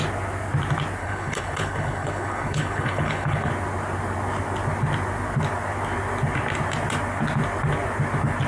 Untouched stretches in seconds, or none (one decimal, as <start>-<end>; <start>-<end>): 0.0-1.0; 3.5-8.5